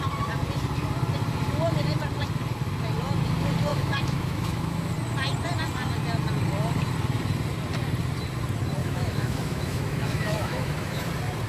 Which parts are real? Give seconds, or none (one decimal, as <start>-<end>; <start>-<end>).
0.0-3.7; 4.9-8.8; 11.1-11.5